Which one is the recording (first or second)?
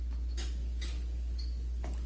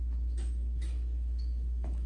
first